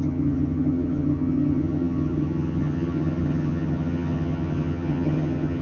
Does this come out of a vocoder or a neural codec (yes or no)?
yes